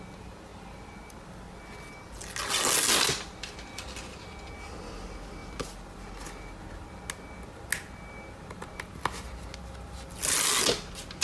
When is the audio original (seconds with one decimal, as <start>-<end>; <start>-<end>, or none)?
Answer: 0.0-11.2